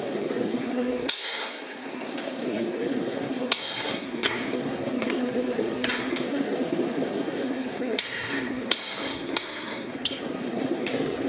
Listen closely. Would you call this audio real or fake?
fake